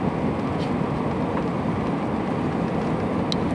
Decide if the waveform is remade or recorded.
recorded